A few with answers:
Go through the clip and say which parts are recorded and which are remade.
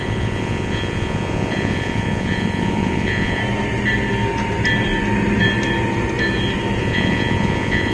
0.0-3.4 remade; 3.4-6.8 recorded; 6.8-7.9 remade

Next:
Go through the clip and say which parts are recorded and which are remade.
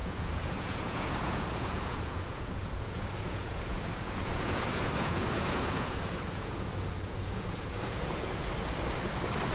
0.0-8.5 remade; 8.5-9.5 recorded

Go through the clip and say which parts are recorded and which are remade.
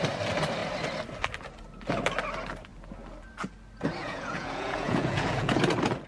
0.0-4.0 recorded; 4.0-5.6 remade; 5.6-6.1 recorded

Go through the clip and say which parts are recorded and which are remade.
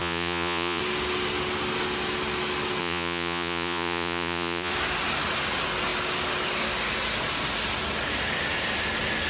0.0-0.8 remade; 0.8-2.8 recorded; 2.8-4.7 remade; 4.7-9.3 recorded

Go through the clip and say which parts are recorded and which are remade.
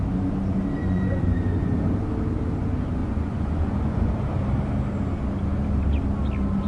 0.0-0.8 recorded; 0.8-1.7 remade; 1.7-3.0 recorded; 3.0-4.1 remade; 4.1-6.7 recorded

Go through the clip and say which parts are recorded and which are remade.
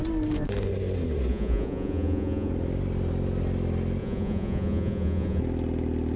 0.0-1.3 recorded; 1.3-2.5 remade; 2.5-4.0 recorded; 4.0-5.4 remade; 5.4-6.2 recorded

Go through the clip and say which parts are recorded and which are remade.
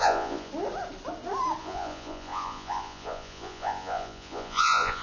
0.0-0.5 remade; 0.5-1.6 recorded; 1.6-5.0 remade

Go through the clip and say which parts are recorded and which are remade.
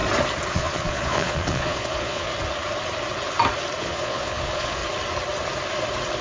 0.0-0.5 recorded; 0.5-2.3 remade; 2.3-3.8 recorded; 3.8-4.8 remade; 4.8-6.2 recorded